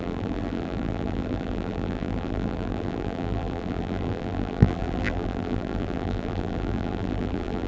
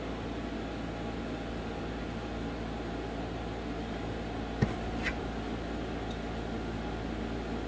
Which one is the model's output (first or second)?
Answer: first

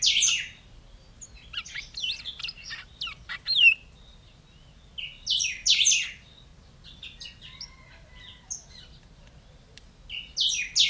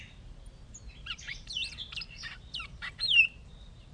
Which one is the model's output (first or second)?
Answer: second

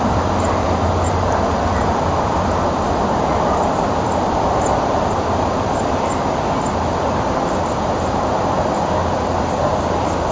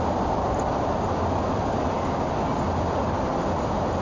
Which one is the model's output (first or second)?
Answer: first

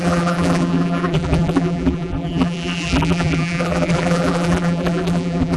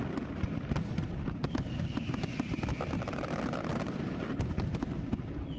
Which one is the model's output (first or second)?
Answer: first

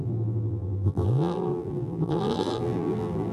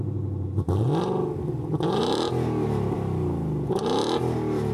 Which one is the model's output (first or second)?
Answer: first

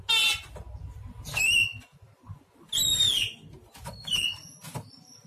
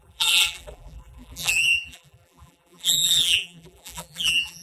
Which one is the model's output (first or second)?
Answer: second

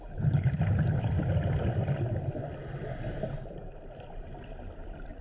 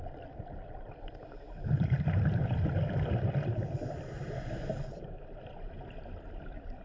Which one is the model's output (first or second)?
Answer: second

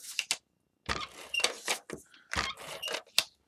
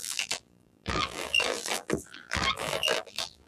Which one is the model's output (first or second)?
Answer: second